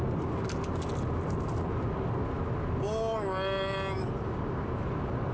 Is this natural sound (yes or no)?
yes